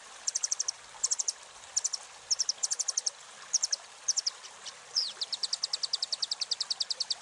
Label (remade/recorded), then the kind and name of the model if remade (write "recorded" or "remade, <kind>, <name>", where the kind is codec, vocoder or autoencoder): remade, vocoder, BigVGAN v2